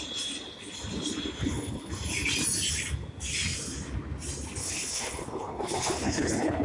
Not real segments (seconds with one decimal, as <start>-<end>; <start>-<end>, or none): 1.4-1.9; 4.6-6.6